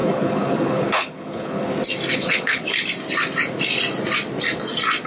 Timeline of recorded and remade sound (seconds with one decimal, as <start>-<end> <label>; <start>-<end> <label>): 0.0-1.7 remade; 1.7-2.1 recorded; 2.1-2.8 remade; 2.8-5.1 recorded